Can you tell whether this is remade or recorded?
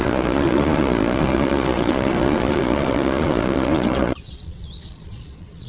remade